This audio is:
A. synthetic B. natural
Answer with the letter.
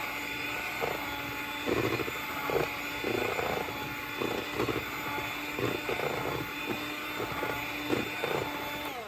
B